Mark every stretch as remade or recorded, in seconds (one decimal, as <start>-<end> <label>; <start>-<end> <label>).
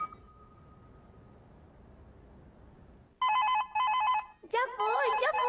0.0-5.5 recorded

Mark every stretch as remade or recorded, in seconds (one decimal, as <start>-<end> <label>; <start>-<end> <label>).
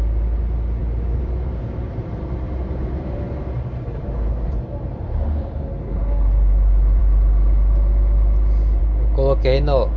0.0-0.8 recorded; 0.8-5.4 remade; 5.4-10.0 recorded